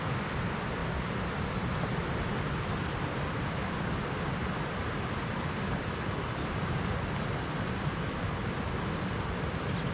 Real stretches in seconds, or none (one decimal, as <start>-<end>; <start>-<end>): 0.0-0.8; 2.9-4.8; 8.2-9.9